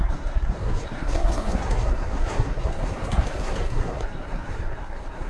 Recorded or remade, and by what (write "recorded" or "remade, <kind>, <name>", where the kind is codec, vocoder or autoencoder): remade, codec, SNAC